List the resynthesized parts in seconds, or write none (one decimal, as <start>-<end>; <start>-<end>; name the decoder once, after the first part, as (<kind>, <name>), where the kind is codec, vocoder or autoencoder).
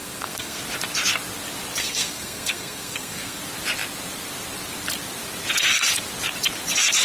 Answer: 0.0-0.6 (codec, SNAC); 1.8-3.4